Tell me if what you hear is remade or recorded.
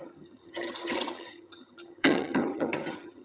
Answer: remade